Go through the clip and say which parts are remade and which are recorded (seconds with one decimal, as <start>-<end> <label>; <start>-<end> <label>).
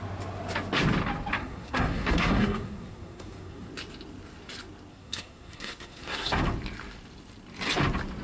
0.0-1.4 recorded; 1.4-3.7 remade; 3.7-4.9 recorded; 4.9-6.4 remade; 6.4-8.2 recorded